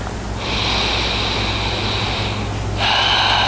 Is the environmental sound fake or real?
real